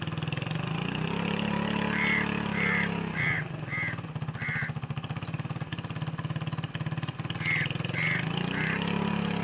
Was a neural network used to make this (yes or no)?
no